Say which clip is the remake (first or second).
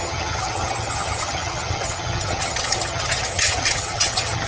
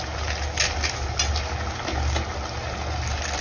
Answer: first